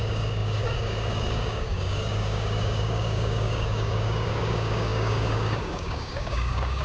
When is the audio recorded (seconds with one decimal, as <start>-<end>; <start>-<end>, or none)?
none